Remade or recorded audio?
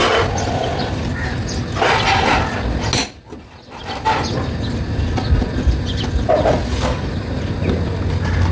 recorded